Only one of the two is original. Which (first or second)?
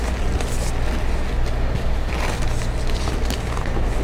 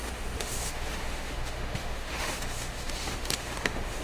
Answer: first